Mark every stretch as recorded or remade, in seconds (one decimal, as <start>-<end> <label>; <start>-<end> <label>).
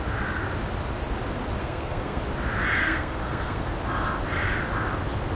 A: 0.0-1.6 recorded; 1.6-2.2 remade; 2.2-2.8 recorded; 2.8-3.7 remade; 3.7-5.3 recorded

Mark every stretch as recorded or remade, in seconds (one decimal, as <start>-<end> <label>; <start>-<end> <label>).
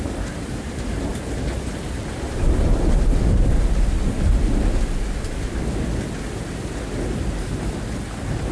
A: 0.0-8.5 recorded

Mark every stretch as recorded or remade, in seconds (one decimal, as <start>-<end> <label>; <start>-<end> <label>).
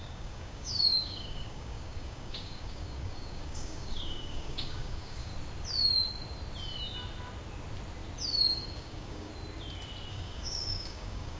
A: 0.0-5.3 remade; 5.3-8.4 recorded; 8.4-9.3 remade; 9.3-10.1 recorded; 10.1-11.4 remade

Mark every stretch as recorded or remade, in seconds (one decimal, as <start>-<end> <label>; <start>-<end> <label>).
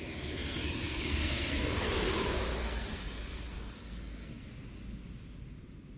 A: 0.0-0.4 recorded; 0.4-1.9 remade; 1.9-2.6 recorded; 2.6-4.5 remade; 4.5-6.0 recorded